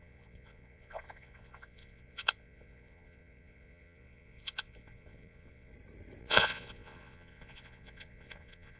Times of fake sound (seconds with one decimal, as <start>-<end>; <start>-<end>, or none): 0.0-5.7; 6.2-8.8

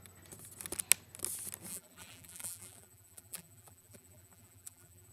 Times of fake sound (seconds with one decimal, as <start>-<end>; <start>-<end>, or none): 1.7-5.1

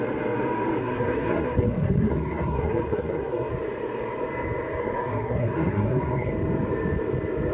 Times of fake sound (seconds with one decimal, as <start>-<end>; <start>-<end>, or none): 0.8-3.5; 4.8-6.3

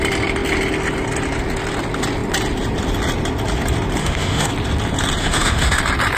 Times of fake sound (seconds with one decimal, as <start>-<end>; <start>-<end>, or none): 4.0-4.5; 5.2-5.8

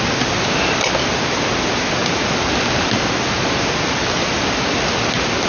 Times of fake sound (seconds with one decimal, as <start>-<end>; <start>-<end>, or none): none